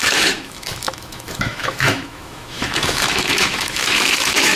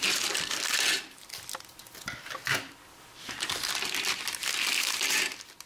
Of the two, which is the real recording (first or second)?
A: second